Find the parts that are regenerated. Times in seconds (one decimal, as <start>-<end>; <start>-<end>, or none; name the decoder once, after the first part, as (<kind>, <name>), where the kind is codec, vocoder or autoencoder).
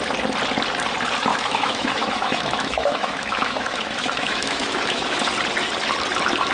1.3-5.2 (autoencoder, DAC-VAE)